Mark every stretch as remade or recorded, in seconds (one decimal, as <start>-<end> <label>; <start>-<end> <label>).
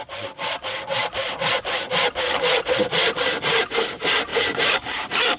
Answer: 0.0-3.2 recorded; 3.2-5.4 remade